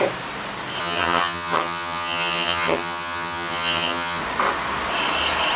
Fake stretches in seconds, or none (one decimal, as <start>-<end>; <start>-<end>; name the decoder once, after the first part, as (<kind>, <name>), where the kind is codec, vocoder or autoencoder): 0.8-4.2 (vocoder, HiFi-GAN)